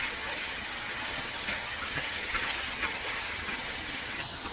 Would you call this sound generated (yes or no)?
yes